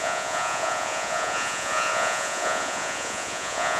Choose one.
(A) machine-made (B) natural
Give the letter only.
A